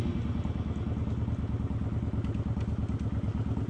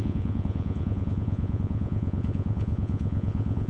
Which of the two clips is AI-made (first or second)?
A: second